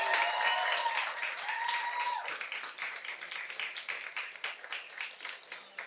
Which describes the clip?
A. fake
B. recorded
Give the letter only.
B